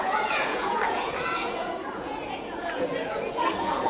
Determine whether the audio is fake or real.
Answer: fake